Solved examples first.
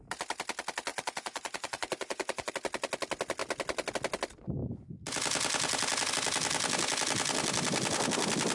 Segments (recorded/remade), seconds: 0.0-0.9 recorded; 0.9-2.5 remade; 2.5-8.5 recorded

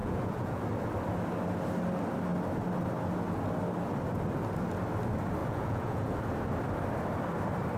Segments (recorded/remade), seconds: 0.0-0.6 remade; 0.6-5.4 recorded; 5.4-6.2 remade; 6.2-7.8 recorded

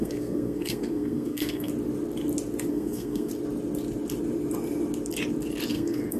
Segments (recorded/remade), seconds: 0.0-1.7 remade; 1.7-2.7 recorded; 2.7-3.3 remade; 3.3-5.7 recorded; 5.7-6.2 remade

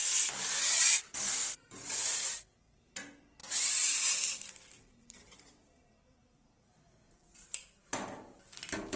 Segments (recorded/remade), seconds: 0.0-0.8 remade; 0.8-1.4 recorded; 1.4-2.9 remade; 2.9-3.4 recorded; 3.4-8.4 remade; 8.4-9.0 recorded